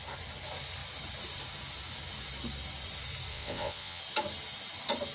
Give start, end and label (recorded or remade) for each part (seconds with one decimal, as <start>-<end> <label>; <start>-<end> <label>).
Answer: 0.0-3.3 recorded; 3.3-4.0 remade; 4.0-5.1 recorded